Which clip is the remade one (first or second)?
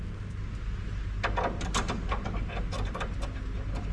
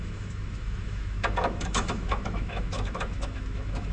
second